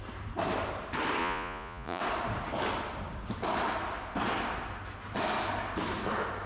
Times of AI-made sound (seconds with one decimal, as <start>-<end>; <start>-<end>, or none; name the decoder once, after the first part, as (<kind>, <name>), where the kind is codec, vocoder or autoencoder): 1.2-2.0 (vocoder, Vocos)